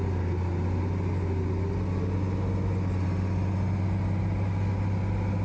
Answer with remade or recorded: recorded